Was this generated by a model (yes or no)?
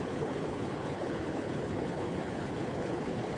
yes